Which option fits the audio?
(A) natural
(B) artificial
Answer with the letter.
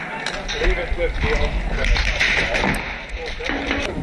A